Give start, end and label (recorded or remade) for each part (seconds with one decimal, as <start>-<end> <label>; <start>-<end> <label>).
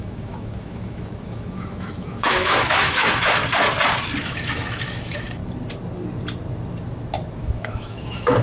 0.0-3.4 remade; 3.4-4.2 recorded; 4.2-5.4 remade; 5.4-7.4 recorded; 7.4-8.4 remade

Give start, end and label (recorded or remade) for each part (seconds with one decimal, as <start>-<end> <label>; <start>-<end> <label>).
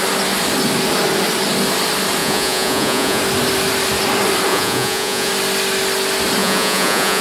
0.0-2.2 recorded; 2.2-3.2 remade; 3.2-4.5 recorded; 4.5-5.3 remade; 5.3-6.4 recorded; 6.4-7.2 remade